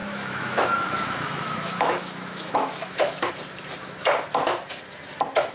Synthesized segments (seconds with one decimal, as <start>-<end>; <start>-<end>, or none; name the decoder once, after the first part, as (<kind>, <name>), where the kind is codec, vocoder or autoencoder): 0.0-3.3 (autoencoder, DAC-VAE)